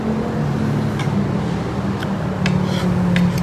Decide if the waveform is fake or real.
real